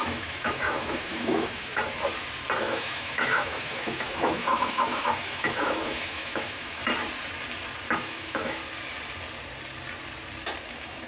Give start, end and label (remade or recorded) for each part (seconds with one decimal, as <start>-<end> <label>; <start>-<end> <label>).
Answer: 0.0-1.8 remade; 1.8-2.6 recorded; 2.6-6.8 remade; 6.8-7.9 recorded; 7.9-8.6 remade; 8.6-10.7 recorded; 10.7-11.1 remade